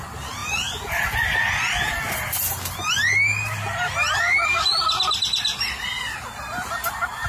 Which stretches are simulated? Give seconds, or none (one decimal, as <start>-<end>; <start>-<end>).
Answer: none